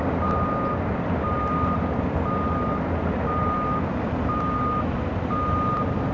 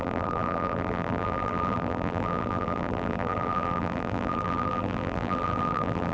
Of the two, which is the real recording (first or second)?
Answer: first